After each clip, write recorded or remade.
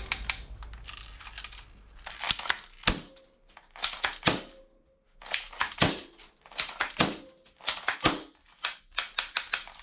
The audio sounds recorded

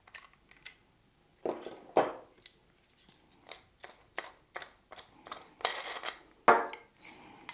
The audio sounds recorded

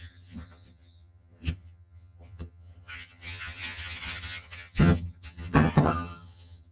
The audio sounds remade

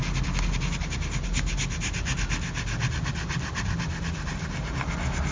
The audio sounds recorded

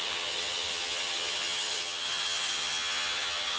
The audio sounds remade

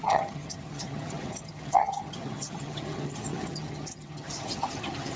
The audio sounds remade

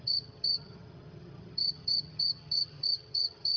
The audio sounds remade